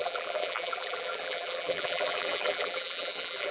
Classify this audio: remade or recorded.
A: remade